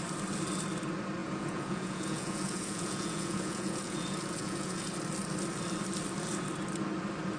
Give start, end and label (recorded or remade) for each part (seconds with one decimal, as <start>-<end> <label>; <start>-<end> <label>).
0.0-1.2 recorded; 1.2-4.9 remade; 4.9-7.4 recorded